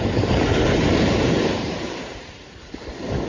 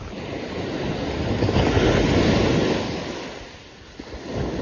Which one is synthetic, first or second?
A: first